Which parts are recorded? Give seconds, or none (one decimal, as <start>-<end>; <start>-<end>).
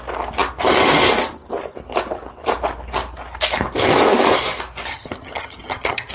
0.0-4.9